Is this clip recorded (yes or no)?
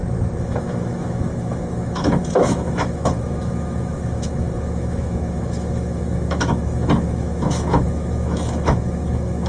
no